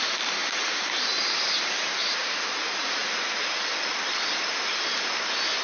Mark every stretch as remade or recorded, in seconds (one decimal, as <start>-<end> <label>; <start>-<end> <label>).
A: 0.0-3.0 remade; 3.0-5.6 recorded